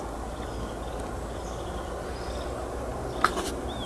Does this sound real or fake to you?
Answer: real